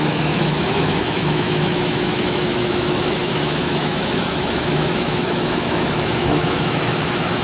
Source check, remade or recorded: remade